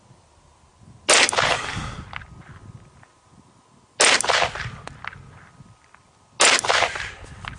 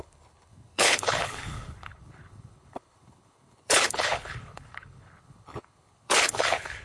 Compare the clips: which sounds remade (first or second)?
second